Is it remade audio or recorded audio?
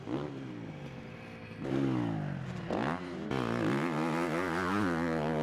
recorded